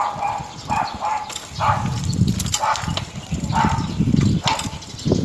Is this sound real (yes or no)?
yes